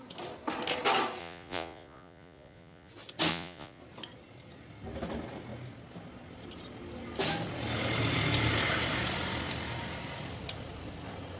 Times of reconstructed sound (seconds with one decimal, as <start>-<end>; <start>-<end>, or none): 1.2-2.9; 3.3-3.8